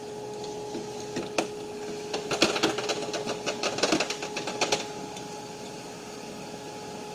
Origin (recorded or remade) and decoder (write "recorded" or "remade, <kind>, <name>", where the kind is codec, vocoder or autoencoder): recorded